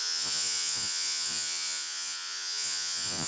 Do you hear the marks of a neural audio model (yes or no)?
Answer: yes